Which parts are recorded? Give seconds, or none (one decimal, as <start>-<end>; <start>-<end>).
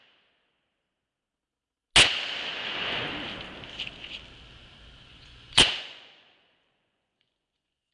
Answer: 0.0-2.5; 3.1-5.1